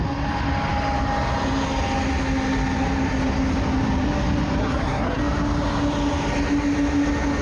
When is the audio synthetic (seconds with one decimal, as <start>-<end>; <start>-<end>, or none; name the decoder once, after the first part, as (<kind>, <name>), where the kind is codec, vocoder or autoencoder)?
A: 4.6-5.2 (codec, SNAC)